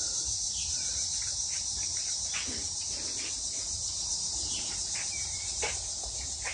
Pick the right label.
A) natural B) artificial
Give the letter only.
B